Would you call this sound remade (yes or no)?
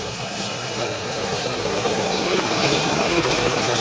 yes